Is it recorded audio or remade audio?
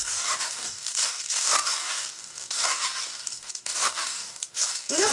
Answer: remade